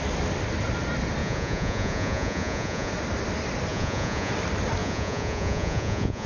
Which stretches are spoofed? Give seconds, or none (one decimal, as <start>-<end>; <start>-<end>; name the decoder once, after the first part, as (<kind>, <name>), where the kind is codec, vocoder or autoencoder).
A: 1.2-2.9 (vocoder, Vocos); 3.7-4.3; 4.8-6.3